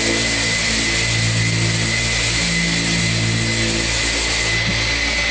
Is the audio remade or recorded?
recorded